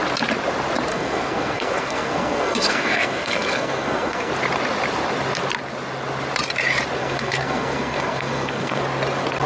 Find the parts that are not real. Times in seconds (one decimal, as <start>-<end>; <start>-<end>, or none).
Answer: 0.9-4.3; 7.0-8.8

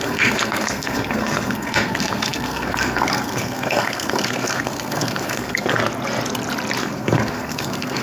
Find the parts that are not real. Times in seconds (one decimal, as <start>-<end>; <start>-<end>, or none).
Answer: 0.0-5.8; 6.8-8.0

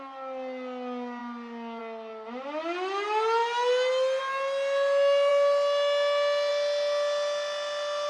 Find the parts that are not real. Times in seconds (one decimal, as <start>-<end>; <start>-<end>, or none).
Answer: none

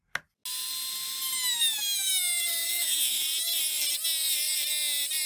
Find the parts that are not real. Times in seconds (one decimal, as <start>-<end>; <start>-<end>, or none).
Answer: 2.6-3.2

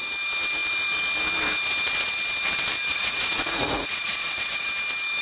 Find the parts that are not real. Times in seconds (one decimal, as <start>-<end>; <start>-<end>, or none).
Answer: 2.9-4.7